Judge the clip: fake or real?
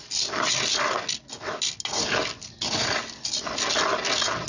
real